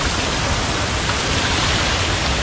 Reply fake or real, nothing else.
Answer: real